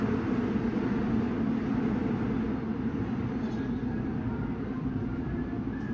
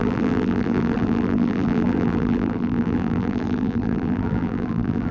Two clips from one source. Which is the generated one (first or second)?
second